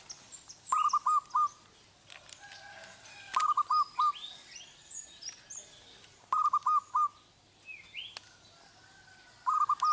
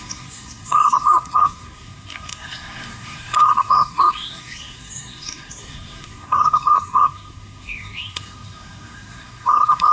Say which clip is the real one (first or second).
first